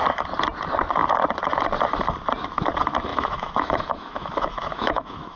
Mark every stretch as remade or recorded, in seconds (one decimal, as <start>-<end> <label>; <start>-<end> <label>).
0.0-3.1 recorded; 3.1-5.4 remade